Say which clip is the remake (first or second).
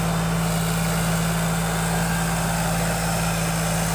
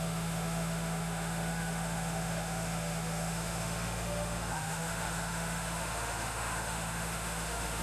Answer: second